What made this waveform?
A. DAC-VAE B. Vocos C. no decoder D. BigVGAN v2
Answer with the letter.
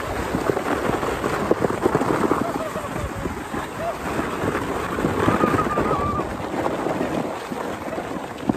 C